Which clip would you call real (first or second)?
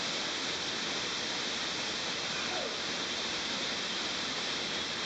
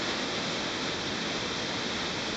second